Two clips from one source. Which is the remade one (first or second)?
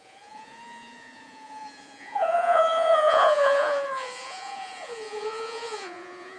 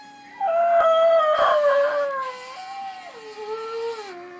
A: first